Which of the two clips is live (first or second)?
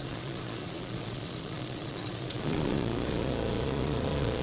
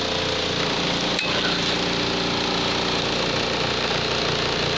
second